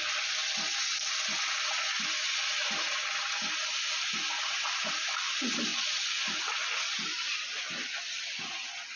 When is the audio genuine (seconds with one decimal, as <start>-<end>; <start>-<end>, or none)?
0.4-5.0; 5.7-8.1